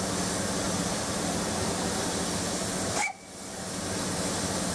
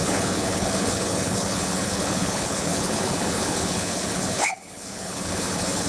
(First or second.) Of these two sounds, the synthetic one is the second